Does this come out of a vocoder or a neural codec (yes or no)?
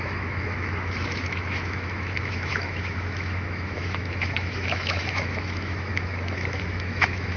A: yes